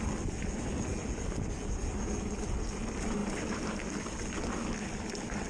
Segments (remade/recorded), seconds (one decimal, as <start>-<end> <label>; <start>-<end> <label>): 0.0-5.5 recorded